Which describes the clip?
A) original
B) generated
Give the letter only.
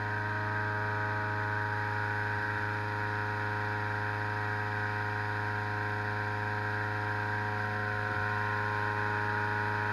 A